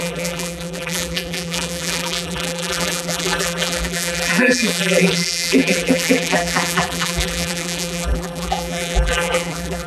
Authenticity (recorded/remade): remade